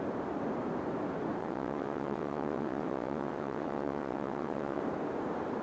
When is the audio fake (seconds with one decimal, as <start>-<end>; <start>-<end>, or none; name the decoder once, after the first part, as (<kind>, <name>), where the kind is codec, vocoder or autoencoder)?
1.4-4.8 (vocoder, WaveNeXt)